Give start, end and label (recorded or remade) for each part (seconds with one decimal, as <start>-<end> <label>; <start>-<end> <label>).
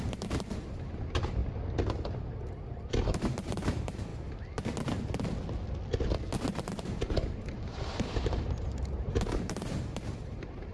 0.0-1.4 remade; 1.4-2.9 recorded; 2.9-4.1 remade; 4.1-6.8 recorded; 6.8-10.7 remade